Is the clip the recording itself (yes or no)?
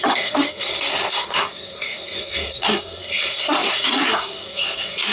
no